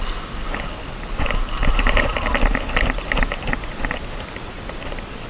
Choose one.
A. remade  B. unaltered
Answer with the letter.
B